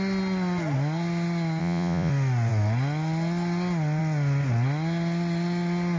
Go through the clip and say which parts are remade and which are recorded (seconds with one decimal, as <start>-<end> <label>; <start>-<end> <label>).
0.0-1.6 recorded; 1.6-2.1 remade; 2.1-6.0 recorded